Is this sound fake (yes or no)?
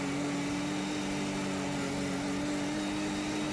no